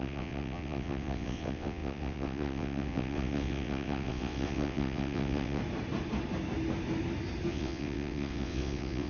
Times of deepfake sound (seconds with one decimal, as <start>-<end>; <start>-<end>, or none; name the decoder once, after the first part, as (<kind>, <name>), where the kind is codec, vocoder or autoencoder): 0.0-5.6 (vocoder, WaveNeXt); 7.5-9.1